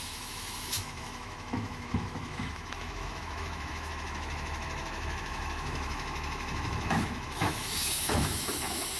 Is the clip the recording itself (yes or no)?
no